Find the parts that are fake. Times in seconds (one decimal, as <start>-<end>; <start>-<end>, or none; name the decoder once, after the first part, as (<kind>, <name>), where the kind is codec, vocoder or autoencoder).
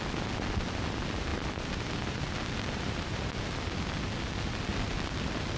1.3-3.3 (vocoder, BigVGAN v2); 4.7-5.6